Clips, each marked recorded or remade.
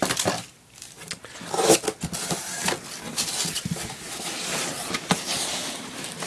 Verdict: recorded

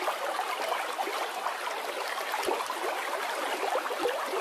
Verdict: recorded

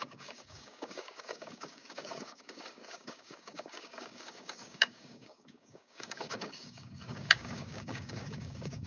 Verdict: remade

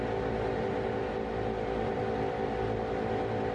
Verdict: recorded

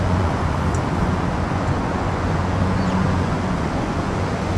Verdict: remade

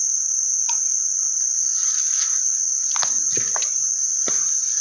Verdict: recorded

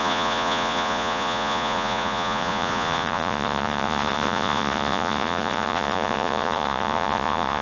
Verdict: remade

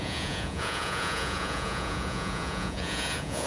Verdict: remade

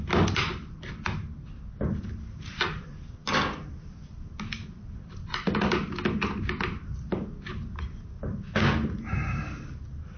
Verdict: recorded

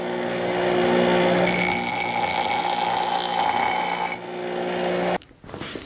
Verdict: recorded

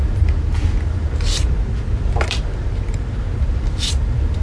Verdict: remade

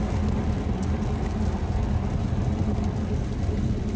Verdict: recorded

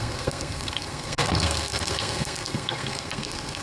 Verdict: remade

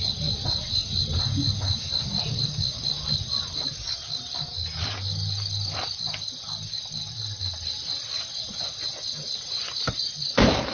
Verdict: recorded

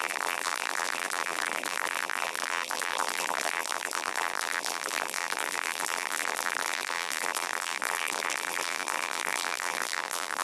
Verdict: remade